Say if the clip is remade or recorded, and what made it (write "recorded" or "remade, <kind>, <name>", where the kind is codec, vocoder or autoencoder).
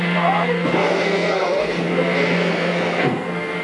remade, codec, SNAC